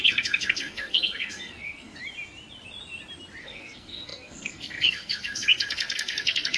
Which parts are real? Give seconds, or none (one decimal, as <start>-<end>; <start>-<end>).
2.0-3.4